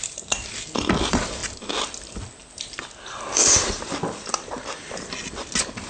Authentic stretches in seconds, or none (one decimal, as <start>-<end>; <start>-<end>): 0.0-5.9